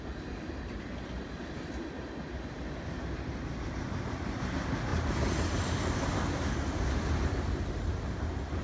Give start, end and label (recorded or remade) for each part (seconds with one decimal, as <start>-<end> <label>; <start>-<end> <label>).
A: 0.0-8.6 recorded